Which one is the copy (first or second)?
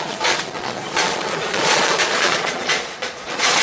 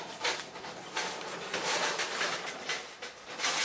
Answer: first